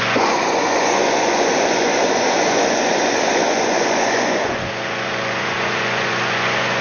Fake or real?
fake